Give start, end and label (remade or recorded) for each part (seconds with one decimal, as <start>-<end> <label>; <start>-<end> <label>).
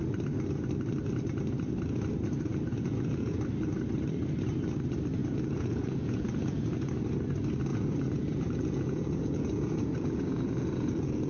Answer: 0.0-2.7 recorded; 2.7-3.4 remade; 3.4-5.2 recorded; 5.2-6.9 remade; 6.9-7.7 recorded; 7.7-11.3 remade